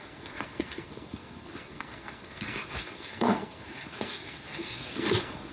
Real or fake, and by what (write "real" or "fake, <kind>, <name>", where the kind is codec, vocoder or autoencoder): fake, codec, SNAC